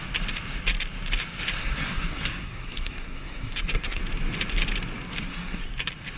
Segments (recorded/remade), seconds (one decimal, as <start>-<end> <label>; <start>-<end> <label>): 0.0-1.6 recorded; 1.6-4.0 remade; 4.0-5.1 recorded; 5.1-5.7 remade; 5.7-6.2 recorded